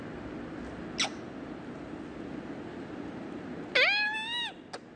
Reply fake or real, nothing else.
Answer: real